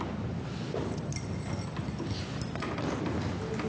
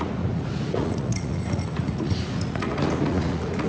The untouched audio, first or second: first